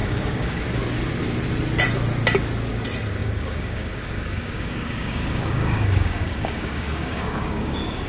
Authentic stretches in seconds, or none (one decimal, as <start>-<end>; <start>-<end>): 0.6-3.2